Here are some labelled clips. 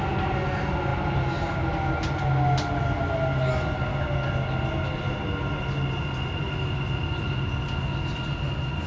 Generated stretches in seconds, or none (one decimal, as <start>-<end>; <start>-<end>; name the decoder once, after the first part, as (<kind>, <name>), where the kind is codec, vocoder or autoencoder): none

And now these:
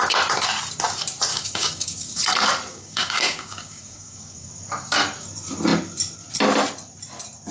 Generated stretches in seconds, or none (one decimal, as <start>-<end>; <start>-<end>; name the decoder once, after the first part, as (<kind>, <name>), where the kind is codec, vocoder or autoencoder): 1.3-2.2 (codec, DAC); 2.7-4.5

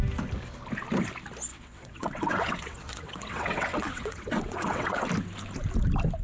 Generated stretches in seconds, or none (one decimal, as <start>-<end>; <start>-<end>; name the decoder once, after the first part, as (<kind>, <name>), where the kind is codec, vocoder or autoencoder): 1.5-5.1 (vocoder, WaveNeXt)

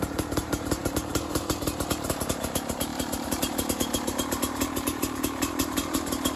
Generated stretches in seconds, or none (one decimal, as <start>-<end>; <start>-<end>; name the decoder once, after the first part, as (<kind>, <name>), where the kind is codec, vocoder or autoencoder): 0.0-6.4 (vocoder, BigVGAN v2)

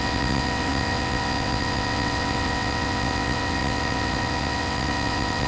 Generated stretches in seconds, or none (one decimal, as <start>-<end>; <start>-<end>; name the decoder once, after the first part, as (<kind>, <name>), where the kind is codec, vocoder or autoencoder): 0.0-5.5 (vocoder, WaveNeXt)